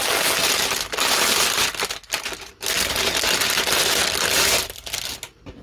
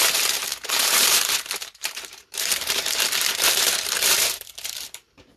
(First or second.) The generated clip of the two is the second